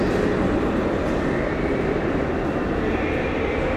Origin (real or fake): real